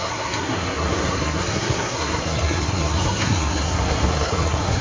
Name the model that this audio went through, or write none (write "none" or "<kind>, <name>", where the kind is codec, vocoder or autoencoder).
codec, SNAC